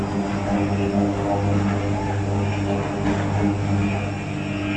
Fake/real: real